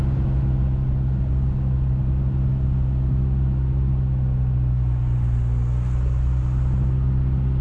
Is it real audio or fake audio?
real